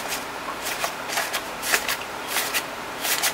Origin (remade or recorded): remade